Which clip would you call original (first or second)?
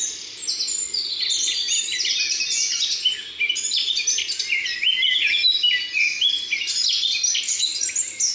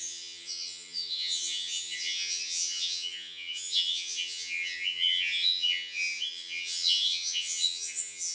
first